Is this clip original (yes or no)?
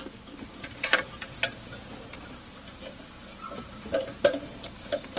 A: no